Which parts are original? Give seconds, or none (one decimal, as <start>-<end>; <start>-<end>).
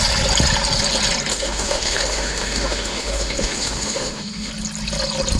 0.0-1.3; 4.5-5.4